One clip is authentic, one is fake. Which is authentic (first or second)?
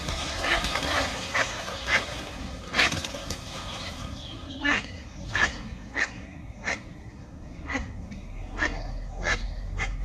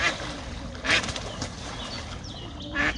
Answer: second